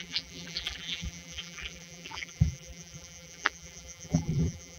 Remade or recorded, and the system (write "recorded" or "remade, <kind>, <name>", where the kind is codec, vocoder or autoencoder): remade, vocoder, BigVGAN v2